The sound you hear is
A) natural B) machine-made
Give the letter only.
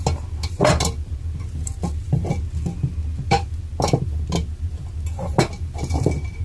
A